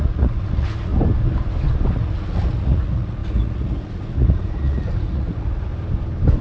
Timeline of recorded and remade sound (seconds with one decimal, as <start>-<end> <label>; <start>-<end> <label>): 0.0-0.9 remade; 0.9-1.9 recorded; 1.9-5.7 remade; 5.7-6.4 recorded

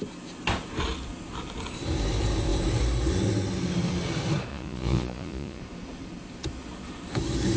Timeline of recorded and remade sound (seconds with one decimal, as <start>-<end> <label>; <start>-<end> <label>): 0.0-4.5 recorded; 4.5-5.6 remade; 5.6-7.6 recorded

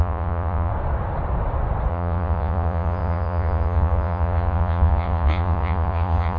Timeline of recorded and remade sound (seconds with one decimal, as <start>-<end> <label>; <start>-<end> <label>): 0.0-0.7 remade; 0.7-1.9 recorded; 1.9-6.4 remade